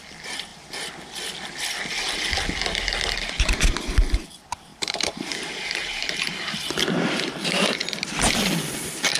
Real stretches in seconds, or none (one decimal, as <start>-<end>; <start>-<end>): 0.0-4.7; 6.7-9.2